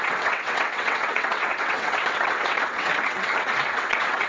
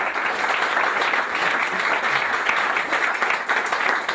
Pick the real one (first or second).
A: second